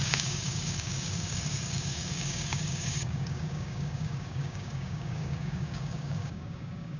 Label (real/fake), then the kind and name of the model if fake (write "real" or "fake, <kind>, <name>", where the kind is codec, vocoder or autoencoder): fake, codec, DAC